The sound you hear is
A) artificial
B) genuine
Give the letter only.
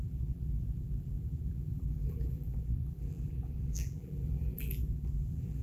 A